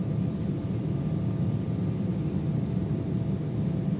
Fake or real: real